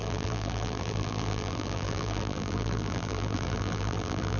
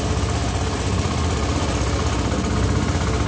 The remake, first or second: first